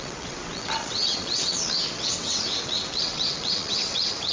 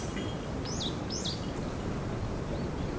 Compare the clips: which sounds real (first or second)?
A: second